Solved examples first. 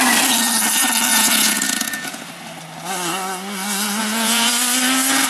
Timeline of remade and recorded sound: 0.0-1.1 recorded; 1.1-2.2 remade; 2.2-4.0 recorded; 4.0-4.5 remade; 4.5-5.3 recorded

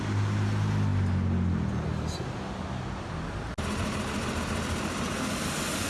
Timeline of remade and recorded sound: 0.0-5.9 recorded

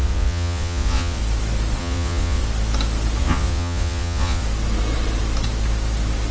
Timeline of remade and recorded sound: 0.0-1.2 remade; 1.2-1.8 recorded; 1.8-2.4 remade; 2.4-3.2 recorded; 3.2-4.4 remade; 4.4-6.3 recorded

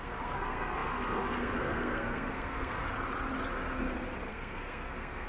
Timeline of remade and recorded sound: 0.0-2.8 remade; 2.8-4.3 recorded; 4.3-5.3 remade

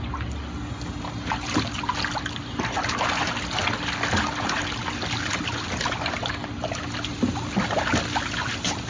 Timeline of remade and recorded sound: 0.0-8.9 recorded